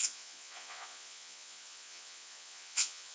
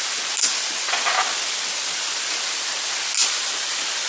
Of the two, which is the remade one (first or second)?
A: first